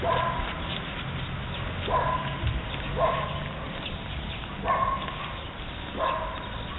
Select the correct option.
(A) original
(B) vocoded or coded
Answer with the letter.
A